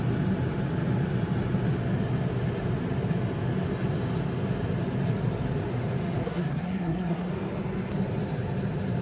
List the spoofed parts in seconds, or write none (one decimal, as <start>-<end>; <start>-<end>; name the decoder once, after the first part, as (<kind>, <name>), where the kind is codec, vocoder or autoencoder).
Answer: 6.2-7.3 (codec, SNAC)